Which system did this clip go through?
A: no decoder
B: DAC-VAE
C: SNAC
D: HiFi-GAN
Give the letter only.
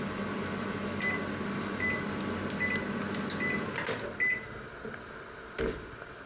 A